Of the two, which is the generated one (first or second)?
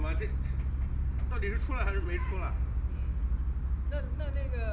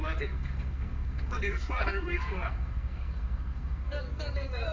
second